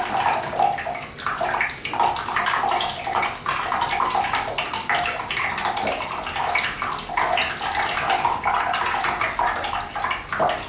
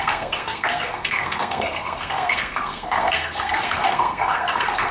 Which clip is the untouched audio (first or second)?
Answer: first